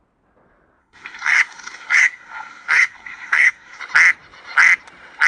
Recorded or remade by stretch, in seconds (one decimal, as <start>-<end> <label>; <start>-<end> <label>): 0.0-0.8 recorded; 0.8-3.8 remade; 3.8-5.3 recorded